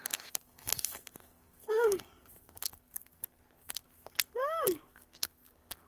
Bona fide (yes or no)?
no